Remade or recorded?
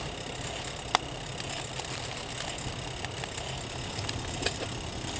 recorded